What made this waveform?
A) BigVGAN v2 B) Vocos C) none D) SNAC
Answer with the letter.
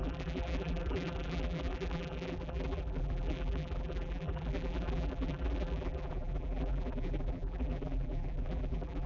A